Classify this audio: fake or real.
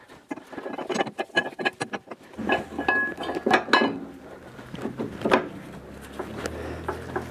real